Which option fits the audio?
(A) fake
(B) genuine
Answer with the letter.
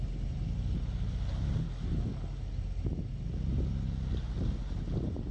B